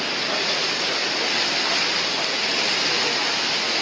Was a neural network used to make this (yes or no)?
no